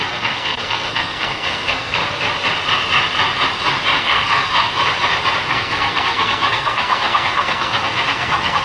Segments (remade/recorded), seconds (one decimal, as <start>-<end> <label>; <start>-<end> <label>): 0.0-2.0 remade; 2.0-4.0 recorded; 4.0-4.7 remade; 4.7-5.5 recorded; 5.5-8.6 remade